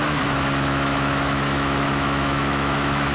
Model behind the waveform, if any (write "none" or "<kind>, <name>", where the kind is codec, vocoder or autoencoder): autoencoder, DAC-VAE